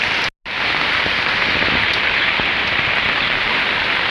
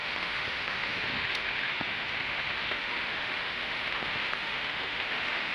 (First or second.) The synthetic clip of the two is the second